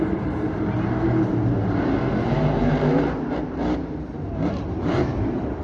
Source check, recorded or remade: remade